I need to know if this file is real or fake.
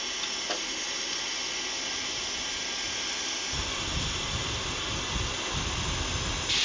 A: real